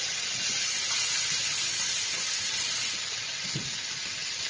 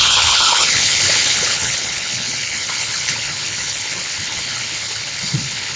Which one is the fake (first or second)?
second